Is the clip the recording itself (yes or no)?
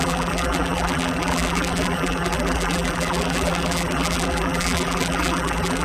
no